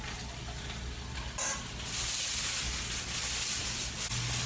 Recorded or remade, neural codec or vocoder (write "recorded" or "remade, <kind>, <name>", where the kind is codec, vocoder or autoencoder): recorded